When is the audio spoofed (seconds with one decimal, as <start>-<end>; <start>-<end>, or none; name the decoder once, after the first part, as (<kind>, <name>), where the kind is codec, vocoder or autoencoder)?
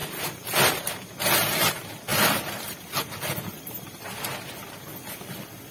0.0-0.9 (vocoder, BigVGAN v2); 2.1-4.0